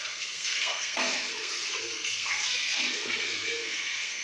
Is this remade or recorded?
remade